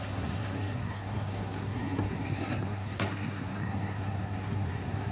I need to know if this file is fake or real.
fake